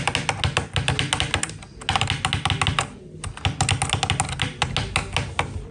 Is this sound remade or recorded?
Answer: recorded